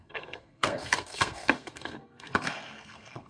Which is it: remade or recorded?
remade